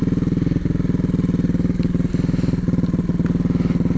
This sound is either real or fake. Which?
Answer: real